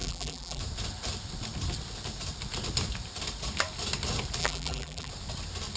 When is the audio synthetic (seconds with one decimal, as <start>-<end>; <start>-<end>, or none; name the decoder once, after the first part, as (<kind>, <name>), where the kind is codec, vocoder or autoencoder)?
0.0-0.6 (vocoder, BigVGAN v2); 4.4-5.1